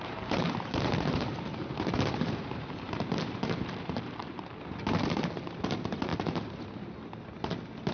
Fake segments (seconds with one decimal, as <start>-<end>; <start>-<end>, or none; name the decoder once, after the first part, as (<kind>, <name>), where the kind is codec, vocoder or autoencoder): 0.0-4.2 (vocoder, BigVGAN v2)

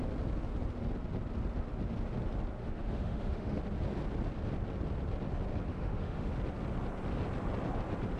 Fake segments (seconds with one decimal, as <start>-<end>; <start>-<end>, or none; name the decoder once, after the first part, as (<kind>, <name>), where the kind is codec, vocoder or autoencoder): 2.6-3.6 (autoencoder, DAC-VAE); 5.7-6.3

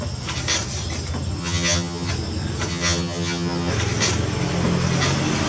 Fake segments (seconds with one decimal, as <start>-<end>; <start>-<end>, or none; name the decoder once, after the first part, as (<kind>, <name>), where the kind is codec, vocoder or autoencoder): 1.4-2.1 (vocoder, HiFi-GAN); 2.7-3.7

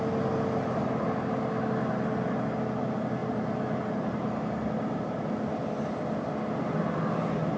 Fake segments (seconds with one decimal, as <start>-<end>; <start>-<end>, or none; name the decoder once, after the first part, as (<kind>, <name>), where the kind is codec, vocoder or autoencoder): none

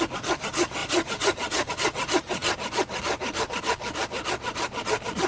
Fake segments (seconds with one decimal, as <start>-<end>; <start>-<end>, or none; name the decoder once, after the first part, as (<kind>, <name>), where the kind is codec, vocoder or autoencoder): none

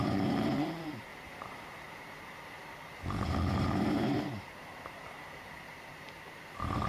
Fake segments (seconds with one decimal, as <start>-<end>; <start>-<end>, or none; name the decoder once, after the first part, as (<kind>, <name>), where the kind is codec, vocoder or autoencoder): 0.0-6.9 (vocoder, BigVGAN v2)